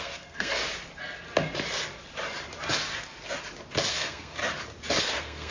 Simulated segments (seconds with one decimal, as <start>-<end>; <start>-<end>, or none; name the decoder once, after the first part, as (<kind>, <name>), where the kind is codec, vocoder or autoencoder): 0.0-0.6 (codec, SNAC); 3.9-4.4; 5.0-5.5